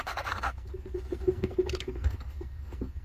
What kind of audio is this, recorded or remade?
remade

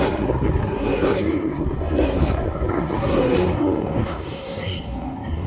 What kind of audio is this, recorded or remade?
remade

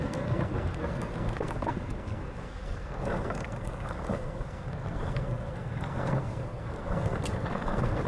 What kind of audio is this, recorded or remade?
remade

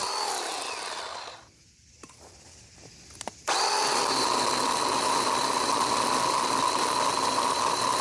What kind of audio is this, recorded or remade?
recorded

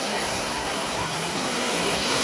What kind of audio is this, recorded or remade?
remade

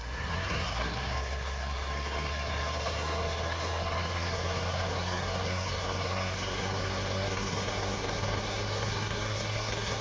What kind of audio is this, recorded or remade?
remade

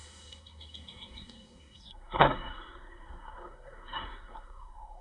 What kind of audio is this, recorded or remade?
remade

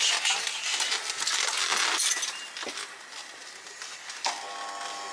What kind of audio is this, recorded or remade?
recorded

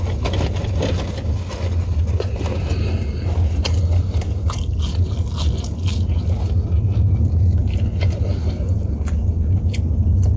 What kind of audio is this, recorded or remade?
recorded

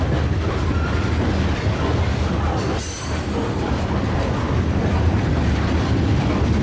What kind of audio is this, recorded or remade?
recorded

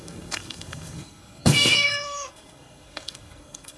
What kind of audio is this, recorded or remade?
remade